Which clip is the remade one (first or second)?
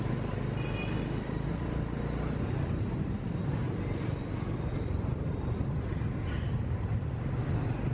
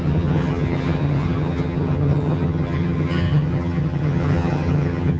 second